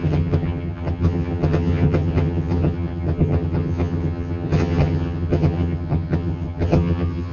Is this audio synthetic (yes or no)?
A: yes